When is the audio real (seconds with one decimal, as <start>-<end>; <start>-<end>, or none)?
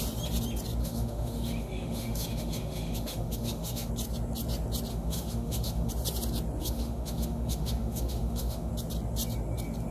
0.0-0.8; 3.9-4.9; 5.9-6.6; 8.7-9.9